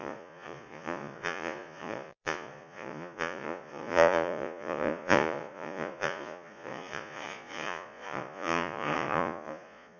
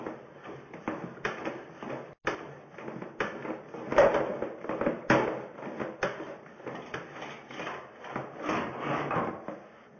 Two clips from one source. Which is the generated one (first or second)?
first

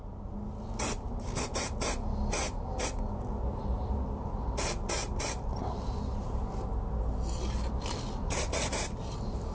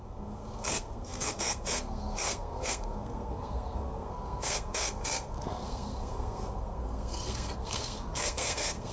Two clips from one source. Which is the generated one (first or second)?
second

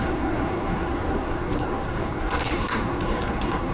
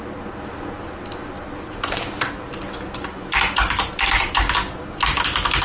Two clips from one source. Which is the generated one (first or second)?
first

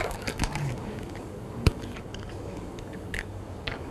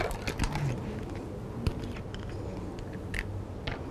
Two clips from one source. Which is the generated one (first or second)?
first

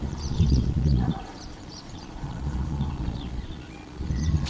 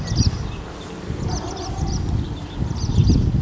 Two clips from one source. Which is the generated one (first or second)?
first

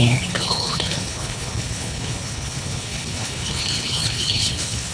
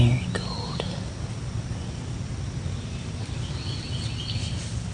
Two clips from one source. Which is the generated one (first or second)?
first